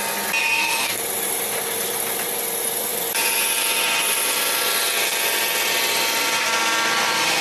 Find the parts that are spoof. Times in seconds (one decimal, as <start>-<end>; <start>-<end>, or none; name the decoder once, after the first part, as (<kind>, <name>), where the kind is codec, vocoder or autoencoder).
0.4-1.0 (codec, SNAC)